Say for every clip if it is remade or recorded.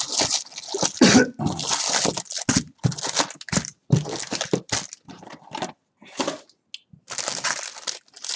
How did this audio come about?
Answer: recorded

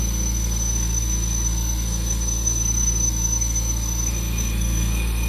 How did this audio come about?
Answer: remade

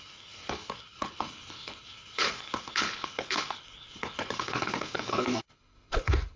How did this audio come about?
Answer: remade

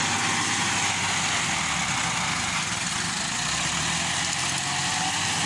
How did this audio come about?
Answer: recorded